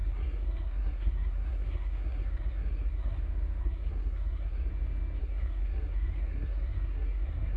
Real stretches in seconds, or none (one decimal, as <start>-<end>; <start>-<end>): 3.2-3.6; 4.7-5.2